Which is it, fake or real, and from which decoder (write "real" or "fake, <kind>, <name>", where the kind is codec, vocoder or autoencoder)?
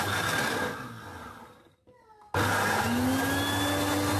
real